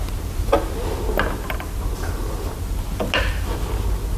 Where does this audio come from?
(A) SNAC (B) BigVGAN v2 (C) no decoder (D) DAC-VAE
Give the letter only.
C